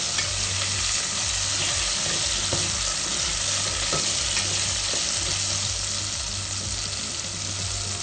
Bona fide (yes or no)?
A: yes